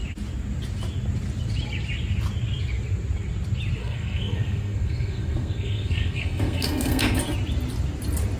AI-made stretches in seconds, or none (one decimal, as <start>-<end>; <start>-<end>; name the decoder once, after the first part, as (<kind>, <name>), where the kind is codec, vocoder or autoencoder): 3.8-7.2 (codec, SNAC)

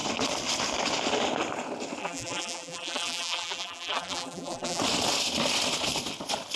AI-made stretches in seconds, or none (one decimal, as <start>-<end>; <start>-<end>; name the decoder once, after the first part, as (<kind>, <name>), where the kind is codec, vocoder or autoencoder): 2.0-4.8 (vocoder, BigVGAN v2)

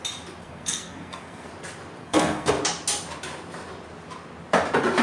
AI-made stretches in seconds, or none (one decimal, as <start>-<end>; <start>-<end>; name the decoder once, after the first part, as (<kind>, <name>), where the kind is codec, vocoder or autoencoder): 0.4-1.5 (codec, SNAC); 2.0-2.5

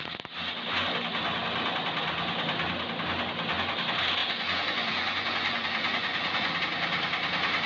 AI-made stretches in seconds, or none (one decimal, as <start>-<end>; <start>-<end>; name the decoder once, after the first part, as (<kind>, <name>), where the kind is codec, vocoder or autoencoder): 4.2-6.6 (vocoder, Vocos)

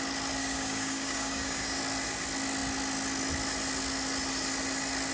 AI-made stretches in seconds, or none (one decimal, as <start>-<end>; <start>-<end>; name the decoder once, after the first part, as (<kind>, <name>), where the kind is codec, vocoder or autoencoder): 0.4-1.8 (codec, DAC)

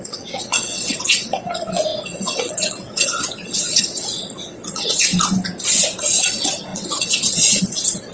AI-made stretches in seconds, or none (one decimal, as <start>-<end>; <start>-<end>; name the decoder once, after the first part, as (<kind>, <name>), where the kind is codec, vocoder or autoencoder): 0.0-5.1 (vocoder, WaveNeXt); 6.0-8.1